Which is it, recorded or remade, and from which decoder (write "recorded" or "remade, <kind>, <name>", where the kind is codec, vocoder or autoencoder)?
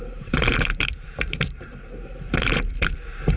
remade, vocoder, BigVGAN v2